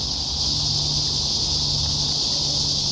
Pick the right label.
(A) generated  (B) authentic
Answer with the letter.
B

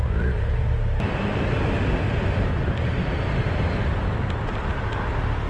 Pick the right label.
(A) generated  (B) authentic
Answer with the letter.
B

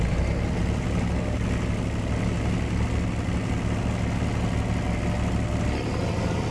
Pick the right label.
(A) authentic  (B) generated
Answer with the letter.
A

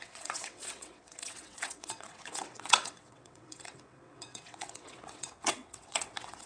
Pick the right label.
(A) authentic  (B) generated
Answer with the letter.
B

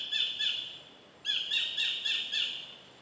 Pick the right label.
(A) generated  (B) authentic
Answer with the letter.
B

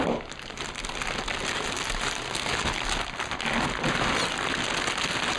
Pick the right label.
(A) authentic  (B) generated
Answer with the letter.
A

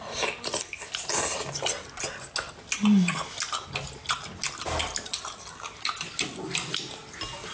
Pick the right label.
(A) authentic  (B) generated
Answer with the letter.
A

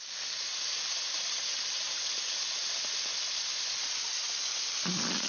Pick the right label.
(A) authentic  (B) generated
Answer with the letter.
A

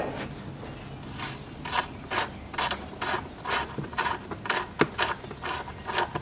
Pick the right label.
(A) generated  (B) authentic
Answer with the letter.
B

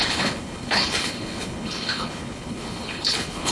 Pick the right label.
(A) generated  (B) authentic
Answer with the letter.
A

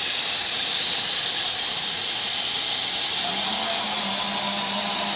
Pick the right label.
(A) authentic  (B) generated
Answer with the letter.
A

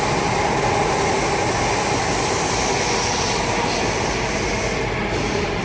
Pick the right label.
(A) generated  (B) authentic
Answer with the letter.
B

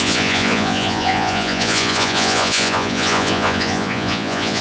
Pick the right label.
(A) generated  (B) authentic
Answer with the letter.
A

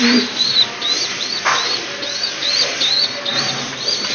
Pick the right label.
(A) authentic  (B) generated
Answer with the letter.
A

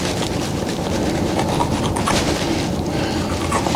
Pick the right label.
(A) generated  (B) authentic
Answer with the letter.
A